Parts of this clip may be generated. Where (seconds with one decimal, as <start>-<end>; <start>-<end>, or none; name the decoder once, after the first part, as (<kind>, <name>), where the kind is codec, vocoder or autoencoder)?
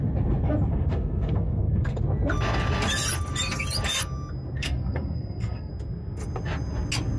0.7-2.0 (codec, SNAC); 4.6-5.7